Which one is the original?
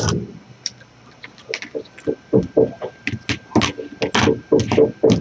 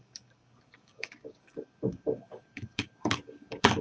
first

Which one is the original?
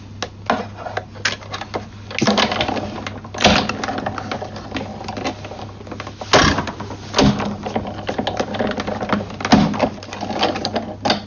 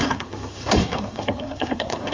first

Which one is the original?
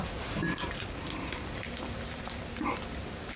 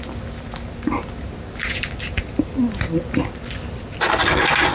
second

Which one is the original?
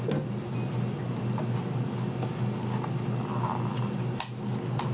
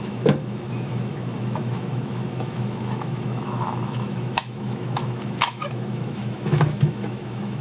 first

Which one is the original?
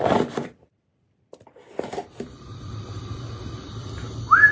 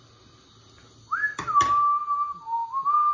second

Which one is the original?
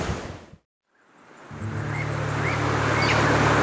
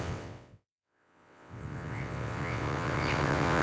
first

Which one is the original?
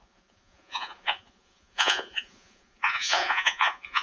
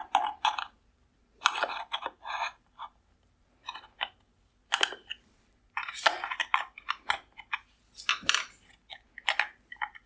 second